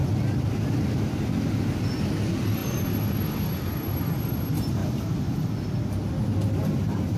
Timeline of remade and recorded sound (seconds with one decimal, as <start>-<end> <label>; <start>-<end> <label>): 0.0-7.2 recorded